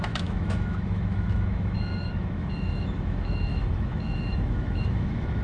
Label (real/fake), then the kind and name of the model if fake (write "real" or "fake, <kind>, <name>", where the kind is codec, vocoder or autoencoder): fake, autoencoder, DAC-VAE